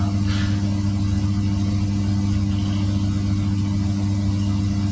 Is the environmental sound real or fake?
real